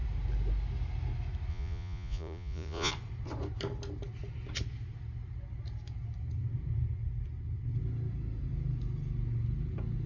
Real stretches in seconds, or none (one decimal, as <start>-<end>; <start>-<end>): 0.0-1.5; 2.9-10.1